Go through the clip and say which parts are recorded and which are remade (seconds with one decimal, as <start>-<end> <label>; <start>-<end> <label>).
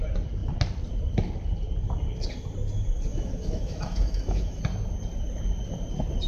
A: 0.0-3.1 recorded; 3.1-4.6 remade; 4.6-6.3 recorded